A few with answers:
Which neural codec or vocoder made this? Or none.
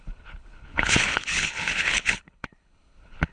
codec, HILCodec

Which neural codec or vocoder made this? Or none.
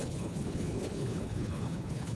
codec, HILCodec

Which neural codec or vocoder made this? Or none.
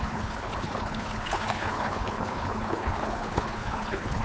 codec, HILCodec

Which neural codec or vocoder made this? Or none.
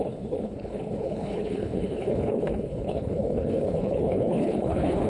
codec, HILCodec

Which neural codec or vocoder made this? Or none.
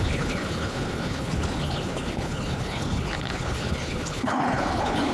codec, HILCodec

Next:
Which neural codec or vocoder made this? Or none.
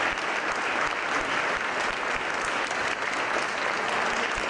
none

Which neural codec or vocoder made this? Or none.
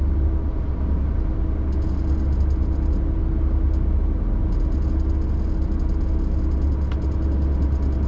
none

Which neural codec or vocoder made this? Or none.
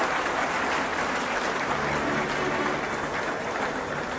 none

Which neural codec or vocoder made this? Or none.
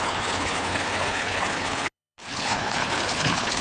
codec, HILCodec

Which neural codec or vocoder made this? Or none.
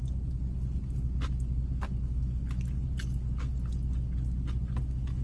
none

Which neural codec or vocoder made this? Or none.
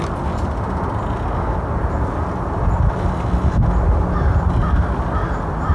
none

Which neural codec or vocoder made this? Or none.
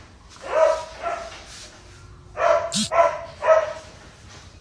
none